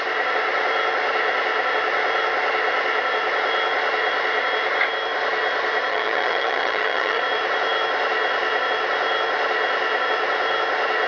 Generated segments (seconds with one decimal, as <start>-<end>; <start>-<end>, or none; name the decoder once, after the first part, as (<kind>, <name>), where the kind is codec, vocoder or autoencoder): 5.9-7.2 (vocoder, HiFi-GAN)